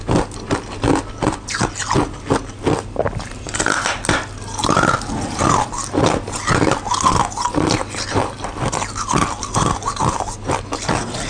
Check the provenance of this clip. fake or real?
real